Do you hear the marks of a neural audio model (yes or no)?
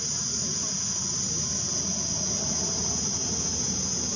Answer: no